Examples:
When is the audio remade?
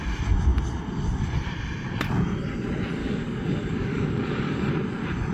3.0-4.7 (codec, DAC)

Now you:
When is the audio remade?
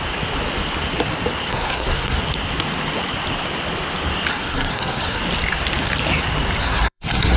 1.5-2.2 (codec, SNAC); 4.3-5.2; 6.6-7.4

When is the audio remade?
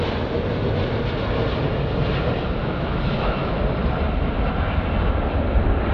2.6-3.6 (autoencoder, DAC-VAE)